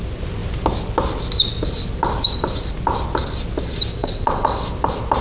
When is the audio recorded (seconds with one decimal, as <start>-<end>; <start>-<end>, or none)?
0.0-4.0; 4.6-5.2